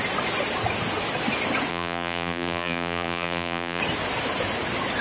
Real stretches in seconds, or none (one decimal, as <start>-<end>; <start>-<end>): 0.0-1.7; 3.8-5.0